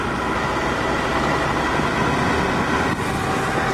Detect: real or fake real